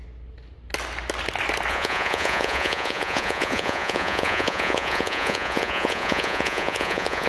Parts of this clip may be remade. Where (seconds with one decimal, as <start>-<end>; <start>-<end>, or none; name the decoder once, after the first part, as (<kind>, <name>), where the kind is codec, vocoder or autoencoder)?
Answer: 1.7-7.3 (vocoder, Vocos)